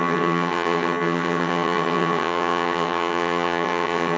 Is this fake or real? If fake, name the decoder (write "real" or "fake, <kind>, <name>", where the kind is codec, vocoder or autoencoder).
fake, vocoder, HiFi-GAN